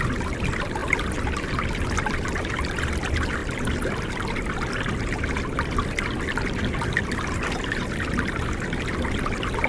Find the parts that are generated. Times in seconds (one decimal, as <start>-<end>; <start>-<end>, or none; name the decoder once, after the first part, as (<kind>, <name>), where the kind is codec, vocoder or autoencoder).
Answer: none